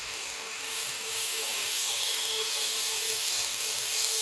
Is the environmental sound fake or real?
fake